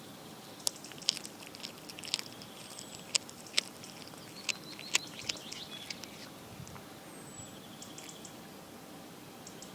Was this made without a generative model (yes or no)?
yes